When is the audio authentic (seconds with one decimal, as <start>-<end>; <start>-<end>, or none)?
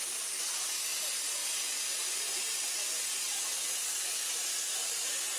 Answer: 0.0-5.4